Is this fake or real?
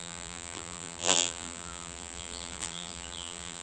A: fake